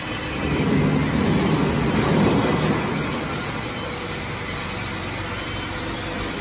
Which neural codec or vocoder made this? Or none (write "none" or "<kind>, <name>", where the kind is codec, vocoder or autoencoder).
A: none